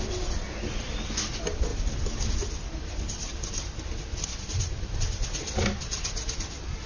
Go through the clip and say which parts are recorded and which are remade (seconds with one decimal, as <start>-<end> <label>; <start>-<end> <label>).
0.0-6.9 recorded

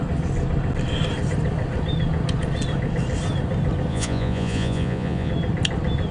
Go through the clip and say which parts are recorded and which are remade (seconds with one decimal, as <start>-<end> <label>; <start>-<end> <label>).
0.0-3.9 recorded; 3.9-5.3 remade; 5.3-6.1 recorded